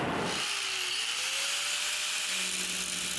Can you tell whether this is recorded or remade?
recorded